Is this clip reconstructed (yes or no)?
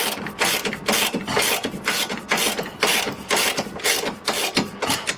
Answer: no